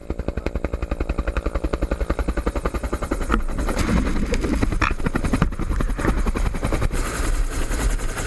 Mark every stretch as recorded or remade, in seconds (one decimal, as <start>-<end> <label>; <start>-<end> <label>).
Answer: 0.0-8.3 recorded